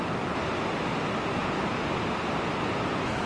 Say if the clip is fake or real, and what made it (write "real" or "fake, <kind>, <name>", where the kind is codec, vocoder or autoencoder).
real